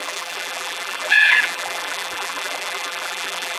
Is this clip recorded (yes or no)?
no